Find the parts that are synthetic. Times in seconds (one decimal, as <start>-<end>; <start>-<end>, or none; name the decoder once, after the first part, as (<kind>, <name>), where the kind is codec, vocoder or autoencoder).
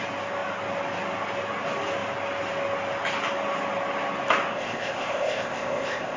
4.5-6.2 (codec, ZipCodec)